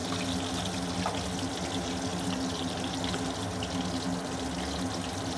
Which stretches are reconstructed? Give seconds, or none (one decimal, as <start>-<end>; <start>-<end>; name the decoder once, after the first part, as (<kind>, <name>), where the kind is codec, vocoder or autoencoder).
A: none